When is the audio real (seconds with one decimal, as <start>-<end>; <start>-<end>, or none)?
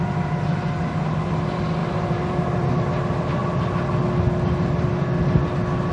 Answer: 0.0-1.8; 2.7-5.9